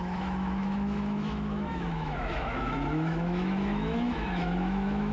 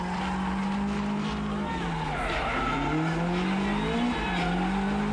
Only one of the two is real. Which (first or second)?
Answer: second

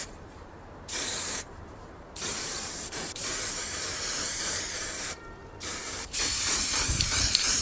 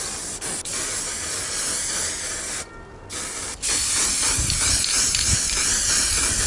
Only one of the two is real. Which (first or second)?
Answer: second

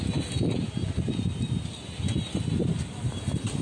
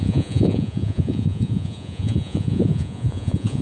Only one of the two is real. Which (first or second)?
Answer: first